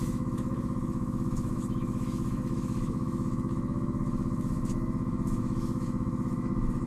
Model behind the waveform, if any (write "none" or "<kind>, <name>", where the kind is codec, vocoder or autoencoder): autoencoder, DAC-VAE